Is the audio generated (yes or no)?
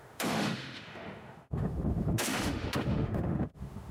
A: yes